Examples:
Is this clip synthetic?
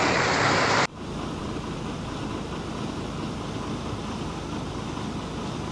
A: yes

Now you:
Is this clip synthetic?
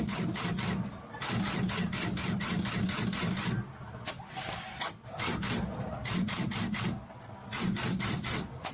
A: no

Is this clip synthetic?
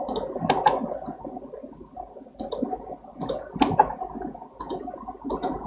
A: no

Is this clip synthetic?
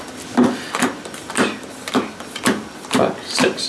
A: no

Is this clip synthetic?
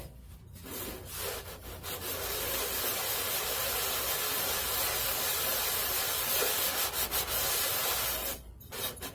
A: no